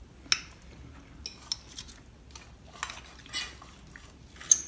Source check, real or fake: real